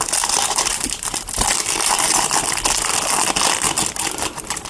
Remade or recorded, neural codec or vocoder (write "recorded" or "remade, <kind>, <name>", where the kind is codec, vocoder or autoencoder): recorded